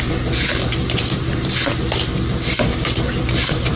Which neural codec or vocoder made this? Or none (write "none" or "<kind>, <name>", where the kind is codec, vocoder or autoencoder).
none